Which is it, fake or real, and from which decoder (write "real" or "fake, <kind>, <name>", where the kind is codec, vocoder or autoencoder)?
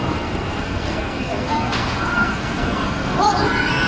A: fake, codec, SNAC